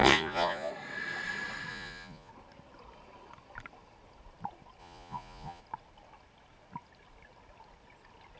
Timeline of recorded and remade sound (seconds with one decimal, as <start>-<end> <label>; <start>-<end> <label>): 0.0-0.7 remade; 0.7-1.7 recorded; 1.7-2.3 remade; 2.3-4.8 recorded; 4.8-5.6 remade; 5.6-8.4 recorded